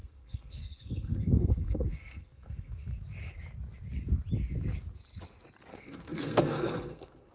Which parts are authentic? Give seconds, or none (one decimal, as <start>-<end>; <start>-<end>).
2.7-5.7